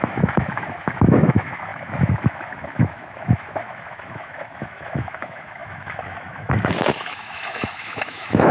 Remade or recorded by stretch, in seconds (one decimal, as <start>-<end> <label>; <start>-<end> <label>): 0.0-8.5 remade